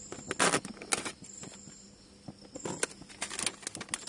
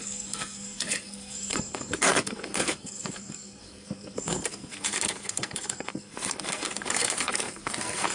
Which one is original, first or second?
first